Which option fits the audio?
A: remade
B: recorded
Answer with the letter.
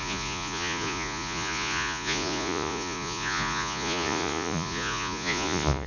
A